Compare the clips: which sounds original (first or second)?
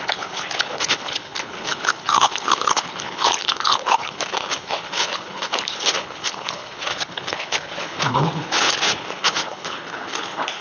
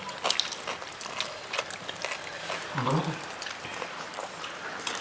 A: second